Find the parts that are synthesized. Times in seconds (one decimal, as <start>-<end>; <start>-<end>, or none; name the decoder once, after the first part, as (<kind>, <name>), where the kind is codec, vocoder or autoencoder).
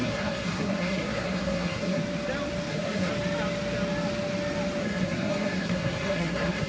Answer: 0.0-2.0 (codec, SNAC); 2.7-3.1; 4.8-6.7